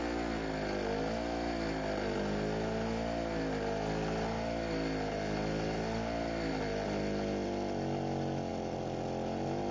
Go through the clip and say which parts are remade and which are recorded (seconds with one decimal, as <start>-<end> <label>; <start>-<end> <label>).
0.0-9.7 recorded